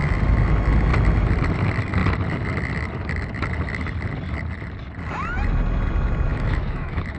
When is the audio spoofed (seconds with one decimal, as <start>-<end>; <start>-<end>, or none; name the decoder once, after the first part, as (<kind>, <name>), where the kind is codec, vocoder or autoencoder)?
6.3-7.2 (autoencoder, DAC-VAE)